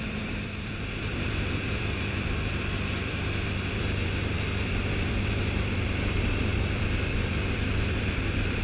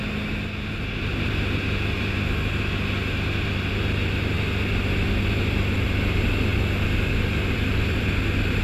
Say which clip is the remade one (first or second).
first